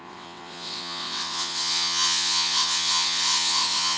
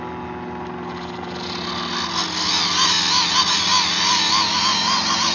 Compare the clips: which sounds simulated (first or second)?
first